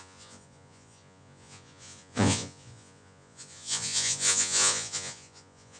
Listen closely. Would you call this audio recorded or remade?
remade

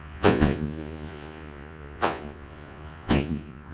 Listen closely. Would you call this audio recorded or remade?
remade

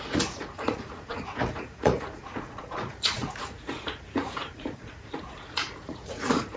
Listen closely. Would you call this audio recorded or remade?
remade